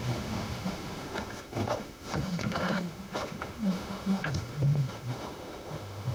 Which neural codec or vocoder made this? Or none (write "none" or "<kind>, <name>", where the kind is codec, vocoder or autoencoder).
autoencoder, DAC-VAE